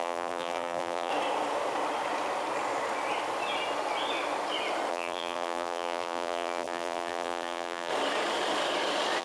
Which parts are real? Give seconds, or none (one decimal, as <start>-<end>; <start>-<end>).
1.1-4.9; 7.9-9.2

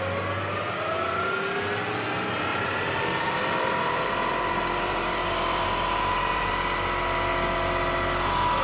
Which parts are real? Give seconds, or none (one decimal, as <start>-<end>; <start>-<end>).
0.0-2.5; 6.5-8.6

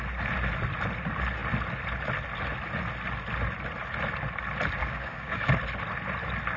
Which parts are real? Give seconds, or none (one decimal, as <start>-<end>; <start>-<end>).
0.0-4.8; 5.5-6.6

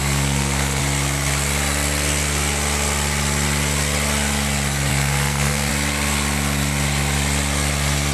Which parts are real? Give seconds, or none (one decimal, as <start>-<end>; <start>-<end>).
0.8-4.9; 5.7-8.1

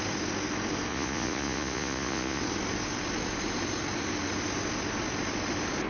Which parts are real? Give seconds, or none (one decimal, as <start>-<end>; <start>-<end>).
0.0-0.9; 2.4-5.9

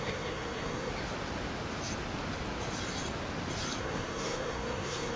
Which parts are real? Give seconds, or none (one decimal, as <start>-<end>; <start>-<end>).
0.9-3.8

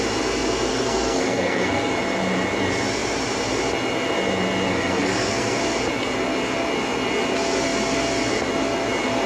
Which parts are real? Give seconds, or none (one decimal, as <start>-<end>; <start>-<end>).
0.0-0.7; 1.9-4.7; 5.6-9.3